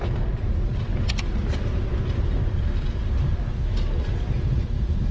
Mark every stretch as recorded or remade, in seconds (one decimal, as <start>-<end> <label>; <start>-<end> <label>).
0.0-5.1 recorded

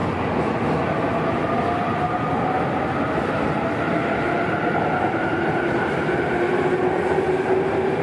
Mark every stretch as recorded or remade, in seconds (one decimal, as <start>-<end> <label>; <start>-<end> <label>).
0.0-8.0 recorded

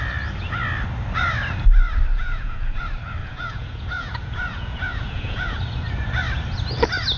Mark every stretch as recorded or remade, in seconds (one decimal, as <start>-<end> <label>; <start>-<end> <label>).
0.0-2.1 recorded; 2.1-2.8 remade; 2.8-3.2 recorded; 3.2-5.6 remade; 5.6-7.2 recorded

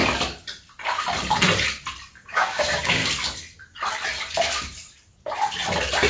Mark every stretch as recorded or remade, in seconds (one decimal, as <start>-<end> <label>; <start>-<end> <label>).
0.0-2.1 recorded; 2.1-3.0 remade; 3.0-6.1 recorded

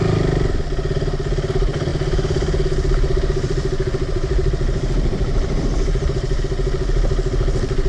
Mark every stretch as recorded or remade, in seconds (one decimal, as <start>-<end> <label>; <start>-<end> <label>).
0.0-1.9 recorded; 1.9-6.4 remade; 6.4-7.9 recorded

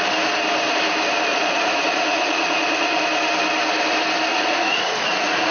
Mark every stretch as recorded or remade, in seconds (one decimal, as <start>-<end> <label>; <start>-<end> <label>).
0.0-1.3 recorded; 1.3-3.0 remade; 3.0-4.3 recorded; 4.3-5.5 remade